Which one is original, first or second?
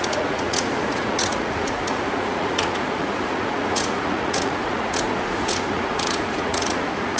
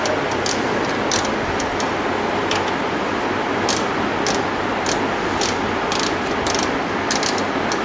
second